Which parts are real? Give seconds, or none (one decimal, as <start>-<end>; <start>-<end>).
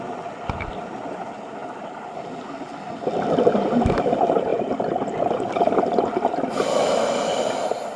0.0-8.0